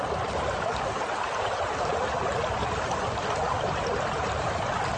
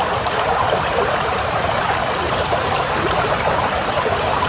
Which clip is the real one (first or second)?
first